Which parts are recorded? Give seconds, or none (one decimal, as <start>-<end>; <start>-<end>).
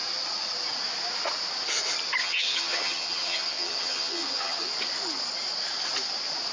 0.0-2.2; 4.7-6.5